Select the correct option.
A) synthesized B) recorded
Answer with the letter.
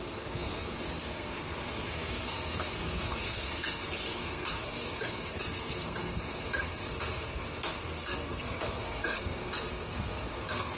A